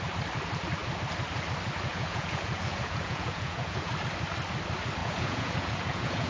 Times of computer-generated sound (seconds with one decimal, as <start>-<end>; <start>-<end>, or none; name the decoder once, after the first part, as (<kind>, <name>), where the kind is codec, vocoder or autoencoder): 1.9-3.9 (vocoder, Vocos); 5.0-6.3